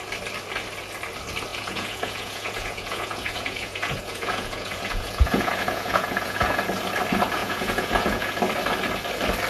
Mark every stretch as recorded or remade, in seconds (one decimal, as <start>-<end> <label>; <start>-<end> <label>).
0.0-1.5 recorded; 1.5-6.6 remade; 6.6-7.4 recorded; 7.4-8.4 remade; 8.4-9.5 recorded